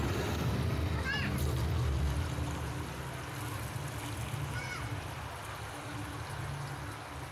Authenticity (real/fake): real